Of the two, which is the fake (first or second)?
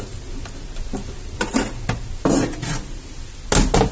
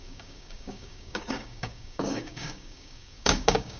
second